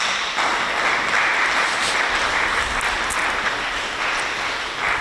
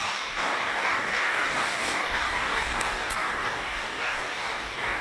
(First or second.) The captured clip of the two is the first